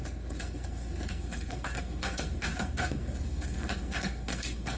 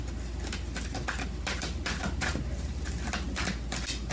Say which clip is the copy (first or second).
first